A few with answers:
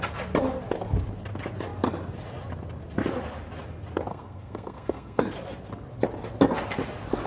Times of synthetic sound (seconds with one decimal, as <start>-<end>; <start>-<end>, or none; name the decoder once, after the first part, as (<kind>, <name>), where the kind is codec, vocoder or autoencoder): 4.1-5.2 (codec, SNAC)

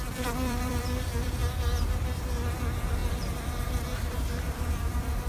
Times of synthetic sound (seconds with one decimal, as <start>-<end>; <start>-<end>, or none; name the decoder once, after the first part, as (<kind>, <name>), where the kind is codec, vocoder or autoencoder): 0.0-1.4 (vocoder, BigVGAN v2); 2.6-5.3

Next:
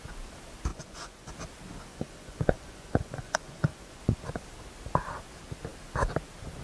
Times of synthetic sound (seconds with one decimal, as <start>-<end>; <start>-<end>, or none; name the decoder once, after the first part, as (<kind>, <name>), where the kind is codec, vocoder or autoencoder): 0.7-1.3 (vocoder, Vocos); 1.9-4.0